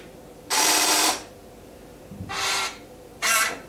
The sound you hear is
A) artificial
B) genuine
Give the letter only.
A